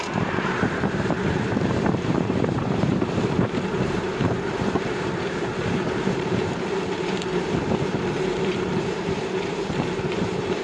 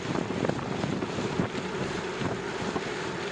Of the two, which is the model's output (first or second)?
first